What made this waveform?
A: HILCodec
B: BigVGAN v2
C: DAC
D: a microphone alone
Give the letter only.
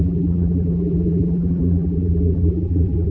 B